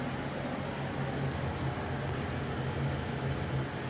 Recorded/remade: recorded